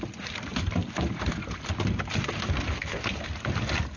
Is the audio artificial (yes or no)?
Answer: no